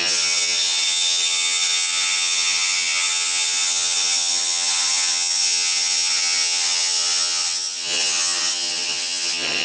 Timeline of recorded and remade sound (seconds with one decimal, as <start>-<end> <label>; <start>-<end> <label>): 0.0-9.6 remade

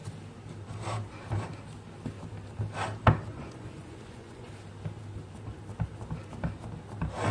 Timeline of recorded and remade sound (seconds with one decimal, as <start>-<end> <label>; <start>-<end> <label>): 0.0-3.3 recorded; 3.3-4.5 remade; 4.5-7.3 recorded

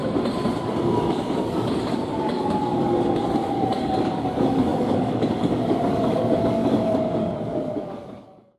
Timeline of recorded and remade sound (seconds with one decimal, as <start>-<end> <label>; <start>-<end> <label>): 0.0-0.6 recorded; 0.6-8.6 remade

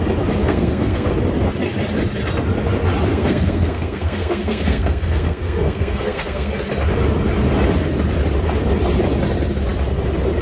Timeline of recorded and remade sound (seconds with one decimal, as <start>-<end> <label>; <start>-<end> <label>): 0.0-0.4 recorded; 0.4-1.1 remade; 1.1-3.1 recorded; 3.1-6.5 remade; 6.5-10.4 recorded

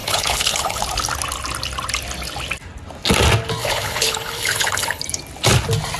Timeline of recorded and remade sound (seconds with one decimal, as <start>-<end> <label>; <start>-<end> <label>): 0.0-0.8 remade; 0.8-3.6 recorded; 3.6-5.0 remade; 5.0-6.0 recorded

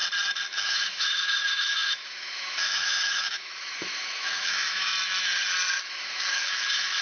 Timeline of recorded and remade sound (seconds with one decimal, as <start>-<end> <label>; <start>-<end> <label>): 0.0-0.6 recorded; 0.6-4.9 remade; 4.9-5.9 recorded; 5.9-7.0 remade

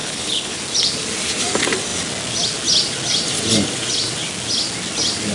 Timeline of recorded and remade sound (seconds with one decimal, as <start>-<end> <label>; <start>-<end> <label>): 0.0-0.6 remade; 0.6-5.3 recorded

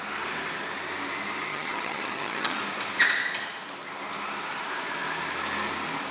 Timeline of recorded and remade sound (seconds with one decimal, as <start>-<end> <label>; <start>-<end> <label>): 0.0-1.5 recorded; 1.5-2.6 remade; 2.6-6.1 recorded